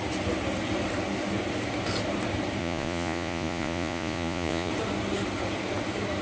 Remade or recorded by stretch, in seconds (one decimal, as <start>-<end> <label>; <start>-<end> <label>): 0.0-2.6 recorded; 2.6-4.7 remade; 4.7-6.2 recorded